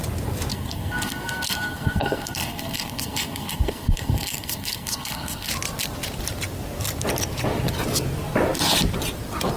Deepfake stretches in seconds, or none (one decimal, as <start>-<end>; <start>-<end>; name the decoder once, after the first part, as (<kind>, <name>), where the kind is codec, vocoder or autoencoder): 0.5-5.5 (codec, SNAC)